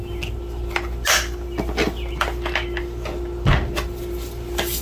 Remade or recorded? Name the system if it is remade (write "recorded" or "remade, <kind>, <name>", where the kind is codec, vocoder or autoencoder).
recorded